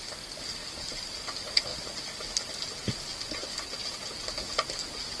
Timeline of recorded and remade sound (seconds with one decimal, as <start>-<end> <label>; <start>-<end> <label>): 0.0-5.2 recorded